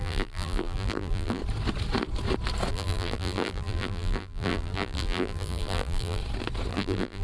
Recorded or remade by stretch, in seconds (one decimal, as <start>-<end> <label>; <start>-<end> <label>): 0.0-1.4 remade; 1.4-2.7 recorded; 2.7-6.2 remade; 6.2-6.7 recorded; 6.7-7.2 remade